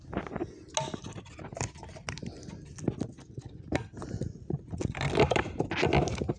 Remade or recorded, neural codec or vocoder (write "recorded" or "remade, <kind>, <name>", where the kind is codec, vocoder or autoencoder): recorded